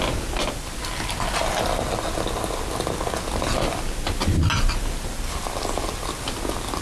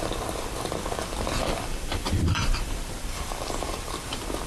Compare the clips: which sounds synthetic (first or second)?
second